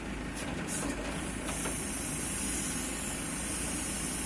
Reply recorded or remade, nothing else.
recorded